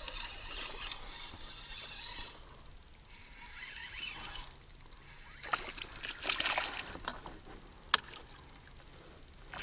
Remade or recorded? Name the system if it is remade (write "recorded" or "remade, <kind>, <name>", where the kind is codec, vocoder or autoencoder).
recorded